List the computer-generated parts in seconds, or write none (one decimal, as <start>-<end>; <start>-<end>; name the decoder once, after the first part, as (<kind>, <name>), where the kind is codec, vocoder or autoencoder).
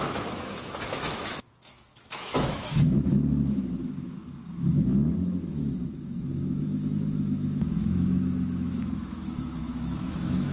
0.0-10.5 (autoencoder, DAC-VAE)